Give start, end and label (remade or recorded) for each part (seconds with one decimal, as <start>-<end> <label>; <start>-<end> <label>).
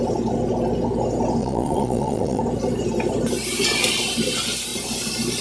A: 0.0-1.4 recorded; 1.4-2.4 remade; 2.4-5.4 recorded